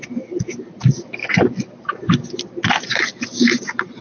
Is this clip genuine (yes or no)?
yes